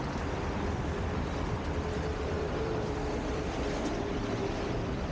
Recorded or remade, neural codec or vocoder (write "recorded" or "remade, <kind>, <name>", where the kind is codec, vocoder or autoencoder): remade, vocoder, BigVGAN v2